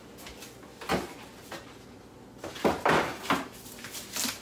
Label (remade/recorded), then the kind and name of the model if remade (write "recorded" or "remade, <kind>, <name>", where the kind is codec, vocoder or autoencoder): recorded